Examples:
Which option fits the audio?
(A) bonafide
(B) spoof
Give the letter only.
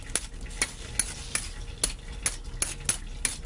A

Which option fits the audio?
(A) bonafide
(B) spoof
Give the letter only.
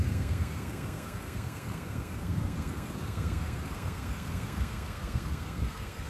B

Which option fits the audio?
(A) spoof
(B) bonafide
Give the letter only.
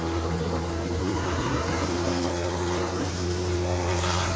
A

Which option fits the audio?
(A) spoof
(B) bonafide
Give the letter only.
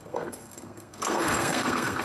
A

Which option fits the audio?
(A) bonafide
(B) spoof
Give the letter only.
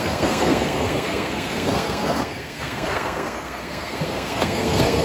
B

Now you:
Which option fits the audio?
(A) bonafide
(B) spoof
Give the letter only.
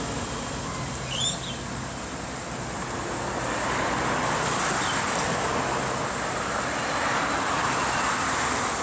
A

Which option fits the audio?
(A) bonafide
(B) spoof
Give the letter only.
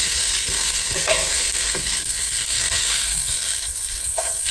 B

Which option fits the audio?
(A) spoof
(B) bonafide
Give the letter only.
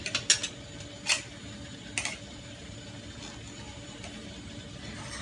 B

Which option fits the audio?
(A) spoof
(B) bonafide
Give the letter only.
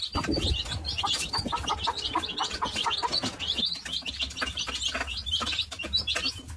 B